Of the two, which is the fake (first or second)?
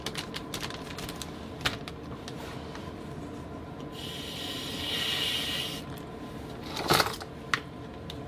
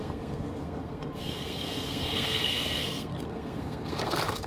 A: second